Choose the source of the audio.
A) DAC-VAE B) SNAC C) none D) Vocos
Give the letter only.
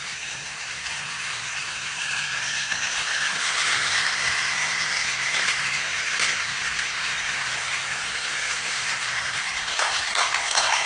B